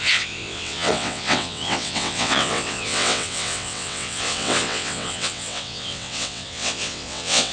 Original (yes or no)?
no